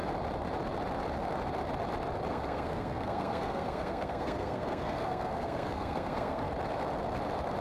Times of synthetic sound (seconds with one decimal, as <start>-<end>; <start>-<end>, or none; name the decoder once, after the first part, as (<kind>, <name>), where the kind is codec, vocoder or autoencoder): 2.3-6.5 (codec, SNAC)